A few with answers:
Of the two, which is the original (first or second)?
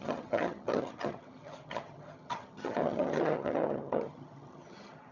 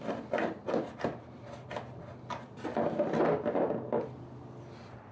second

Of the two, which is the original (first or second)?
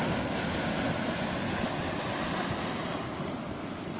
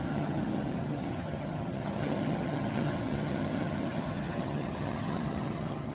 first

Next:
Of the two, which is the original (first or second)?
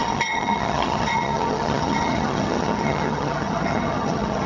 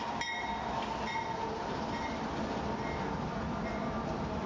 second